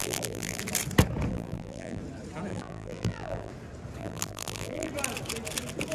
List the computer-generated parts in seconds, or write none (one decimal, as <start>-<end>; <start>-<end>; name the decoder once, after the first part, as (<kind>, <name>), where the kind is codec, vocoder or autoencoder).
0.0-0.6 (vocoder, BigVGAN v2); 1.3-2.0; 2.5-3.5; 4.0-4.9